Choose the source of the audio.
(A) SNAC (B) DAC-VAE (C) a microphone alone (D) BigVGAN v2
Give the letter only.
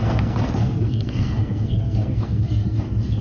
A